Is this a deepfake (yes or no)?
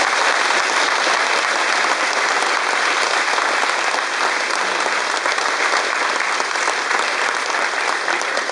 no